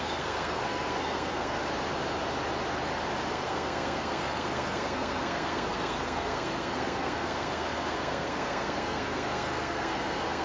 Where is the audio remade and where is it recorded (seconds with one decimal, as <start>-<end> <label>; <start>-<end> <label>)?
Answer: 0.0-1.6 remade; 1.6-3.3 recorded; 3.3-10.4 remade